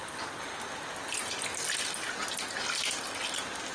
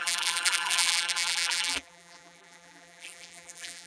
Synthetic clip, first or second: second